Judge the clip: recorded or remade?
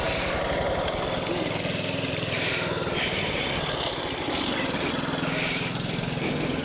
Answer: recorded